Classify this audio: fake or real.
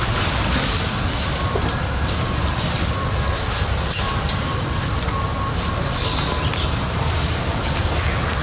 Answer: real